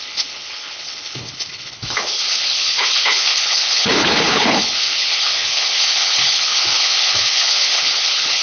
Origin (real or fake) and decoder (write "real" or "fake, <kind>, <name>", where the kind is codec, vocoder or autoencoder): fake, codec, HILCodec